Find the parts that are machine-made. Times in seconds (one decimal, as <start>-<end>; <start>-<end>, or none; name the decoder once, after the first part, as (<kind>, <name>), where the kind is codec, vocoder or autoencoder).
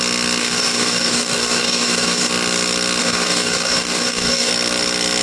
0.4-2.3 (codec, DAC); 3.0-4.5